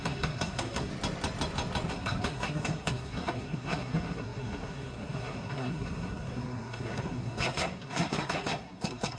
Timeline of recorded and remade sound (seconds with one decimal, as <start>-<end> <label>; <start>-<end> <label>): 0.0-0.9 remade; 0.9-1.9 recorded; 1.9-9.2 remade